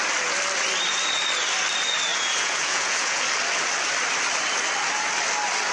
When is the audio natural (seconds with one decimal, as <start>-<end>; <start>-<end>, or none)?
0.0-2.1; 3.2-5.7

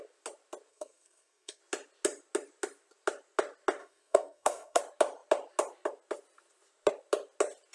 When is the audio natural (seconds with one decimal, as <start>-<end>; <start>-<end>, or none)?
0.0-0.7; 1.6-3.8; 4.8-7.7

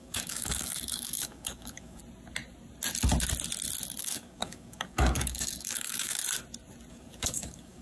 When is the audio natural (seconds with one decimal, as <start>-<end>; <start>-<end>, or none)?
2.0-4.0; 6.2-6.9